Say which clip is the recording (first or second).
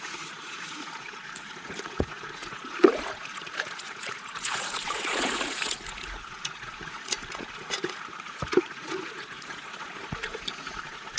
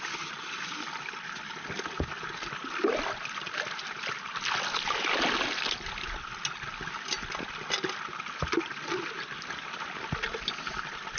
second